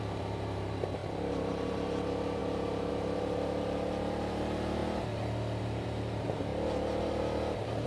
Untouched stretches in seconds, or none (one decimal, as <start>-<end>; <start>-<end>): 1.0-1.5; 4.8-5.6; 6.5-7.0